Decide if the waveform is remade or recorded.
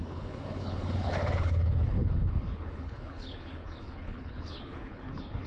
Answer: remade